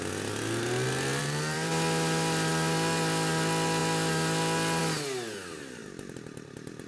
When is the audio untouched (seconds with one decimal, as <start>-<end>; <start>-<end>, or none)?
0.0-1.2; 1.7-6.9